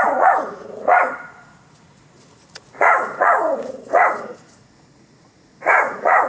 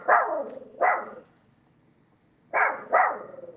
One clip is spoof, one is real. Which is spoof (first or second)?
first